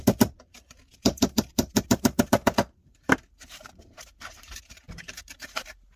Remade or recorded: remade